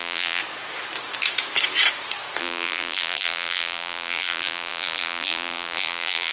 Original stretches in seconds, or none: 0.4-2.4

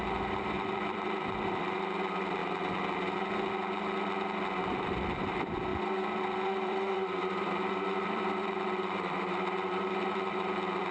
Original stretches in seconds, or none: 2.4-4.7